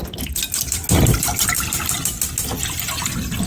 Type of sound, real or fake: real